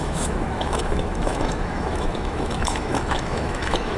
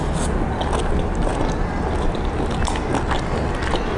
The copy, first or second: first